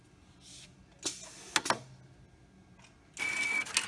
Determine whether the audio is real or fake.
real